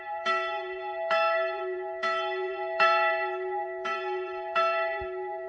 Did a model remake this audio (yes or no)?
yes